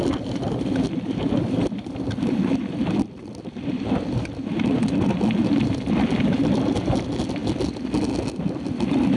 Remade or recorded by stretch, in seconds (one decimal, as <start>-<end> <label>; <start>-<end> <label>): 0.0-9.2 recorded